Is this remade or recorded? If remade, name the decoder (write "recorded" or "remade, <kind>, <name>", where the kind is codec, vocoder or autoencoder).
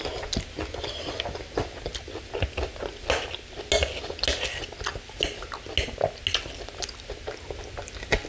recorded